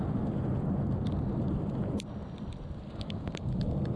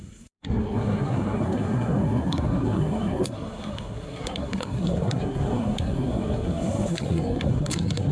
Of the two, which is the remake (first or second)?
second